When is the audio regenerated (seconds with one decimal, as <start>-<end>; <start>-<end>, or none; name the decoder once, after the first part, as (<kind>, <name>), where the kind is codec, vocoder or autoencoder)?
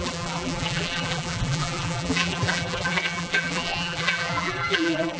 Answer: 0.0-5.2 (vocoder, BigVGAN v2)